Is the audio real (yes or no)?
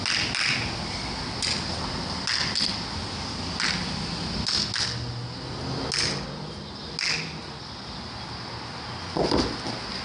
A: yes